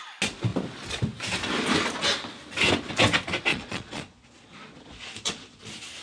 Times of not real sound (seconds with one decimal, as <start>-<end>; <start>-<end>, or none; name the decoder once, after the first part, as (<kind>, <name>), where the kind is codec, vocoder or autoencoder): 3.5-5.6 (vocoder, Vocos)